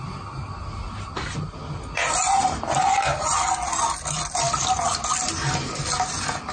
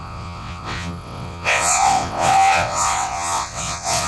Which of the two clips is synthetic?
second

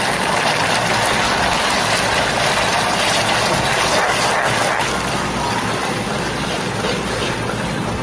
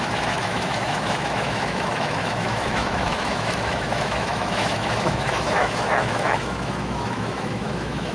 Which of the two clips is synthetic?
second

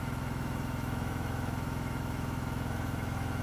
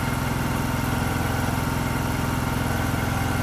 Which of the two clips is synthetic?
first